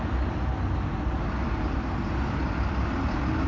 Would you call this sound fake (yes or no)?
no